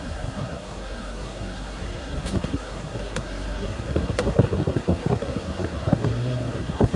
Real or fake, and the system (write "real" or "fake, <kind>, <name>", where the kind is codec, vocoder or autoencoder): fake, codec, SNAC